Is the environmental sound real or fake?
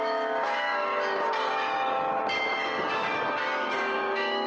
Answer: fake